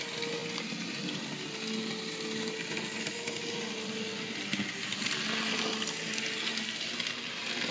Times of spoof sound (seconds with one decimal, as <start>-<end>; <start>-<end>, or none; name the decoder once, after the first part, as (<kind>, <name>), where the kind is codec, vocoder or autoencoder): none